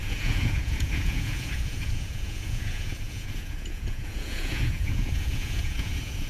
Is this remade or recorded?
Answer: remade